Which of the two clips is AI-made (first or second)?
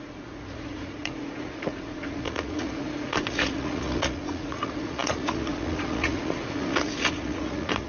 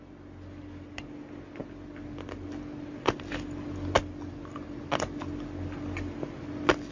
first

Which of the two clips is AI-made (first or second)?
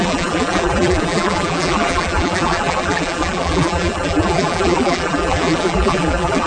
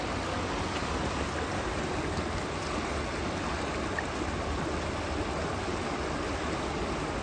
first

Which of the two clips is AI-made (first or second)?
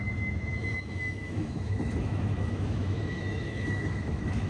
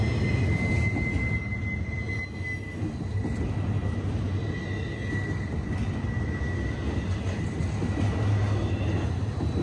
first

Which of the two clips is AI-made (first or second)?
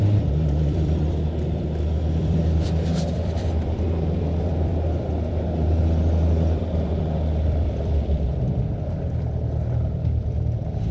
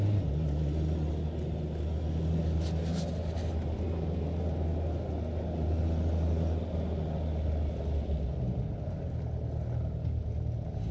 first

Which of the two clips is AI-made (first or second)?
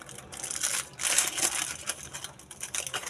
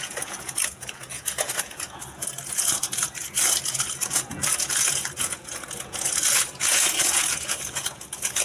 second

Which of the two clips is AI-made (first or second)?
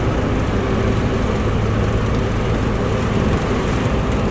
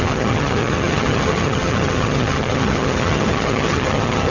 second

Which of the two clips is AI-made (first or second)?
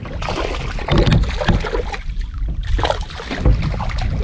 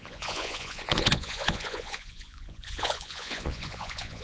second